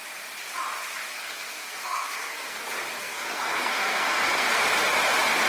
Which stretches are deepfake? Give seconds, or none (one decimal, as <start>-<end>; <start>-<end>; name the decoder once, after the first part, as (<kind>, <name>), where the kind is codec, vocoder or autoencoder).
1.1-2.6 (codec, SNAC); 3.0-4.6